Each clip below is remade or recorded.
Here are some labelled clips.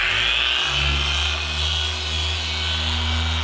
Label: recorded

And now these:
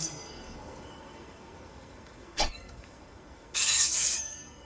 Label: remade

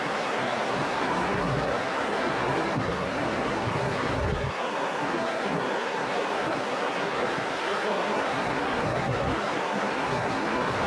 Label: remade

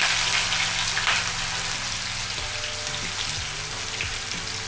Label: recorded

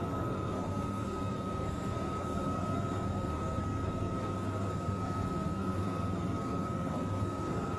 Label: remade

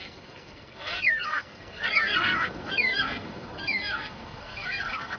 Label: remade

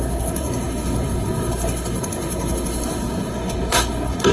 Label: remade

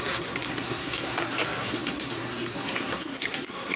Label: remade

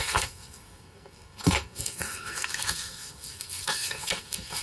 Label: remade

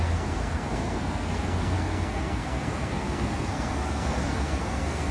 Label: remade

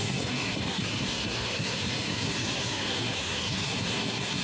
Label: remade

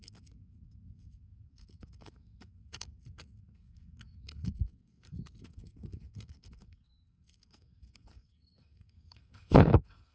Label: remade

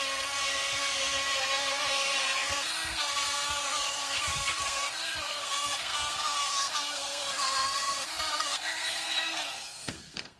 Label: remade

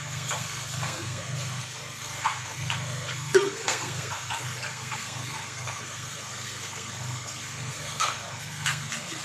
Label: remade